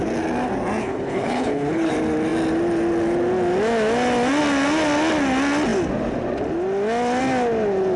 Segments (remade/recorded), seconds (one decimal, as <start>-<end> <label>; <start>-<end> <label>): 0.0-0.8 recorded; 0.8-1.9 remade; 1.9-8.0 recorded